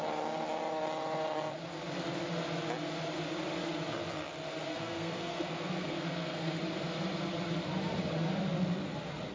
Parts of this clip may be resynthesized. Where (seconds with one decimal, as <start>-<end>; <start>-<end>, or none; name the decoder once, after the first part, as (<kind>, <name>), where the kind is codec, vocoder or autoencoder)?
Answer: 4.7-6.6 (codec, SNAC)